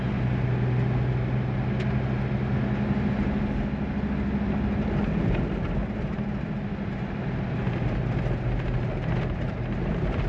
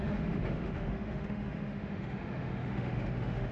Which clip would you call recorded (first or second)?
first